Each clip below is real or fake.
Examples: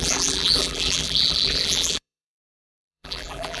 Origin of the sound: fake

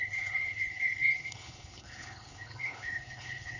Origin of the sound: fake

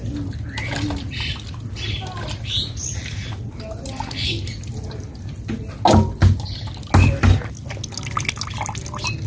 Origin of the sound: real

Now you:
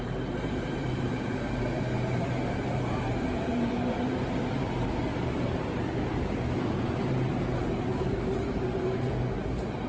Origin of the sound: fake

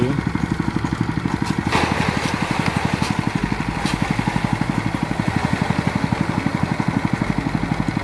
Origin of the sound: real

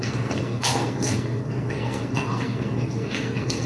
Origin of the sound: fake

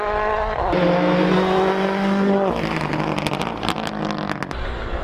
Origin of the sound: real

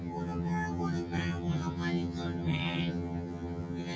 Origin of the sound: fake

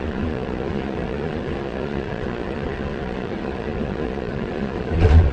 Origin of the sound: fake